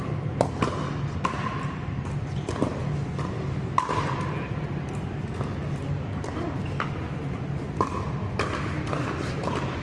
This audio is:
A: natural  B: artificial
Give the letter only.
A